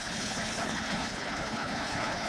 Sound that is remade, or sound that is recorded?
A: remade